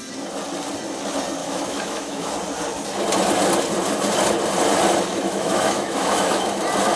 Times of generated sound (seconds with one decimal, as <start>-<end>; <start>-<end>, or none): 1.4-2.3; 5.1-6.6